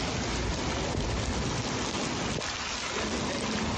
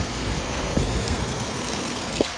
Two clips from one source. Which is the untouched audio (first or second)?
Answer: first